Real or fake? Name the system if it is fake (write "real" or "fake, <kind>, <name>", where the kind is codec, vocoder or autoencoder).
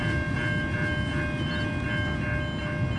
real